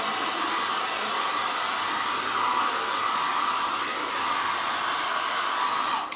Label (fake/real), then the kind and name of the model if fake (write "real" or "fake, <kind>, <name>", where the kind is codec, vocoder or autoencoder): real